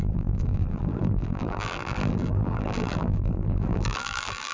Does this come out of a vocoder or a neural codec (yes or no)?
yes